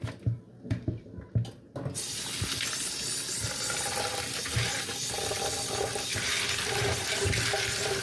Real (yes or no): yes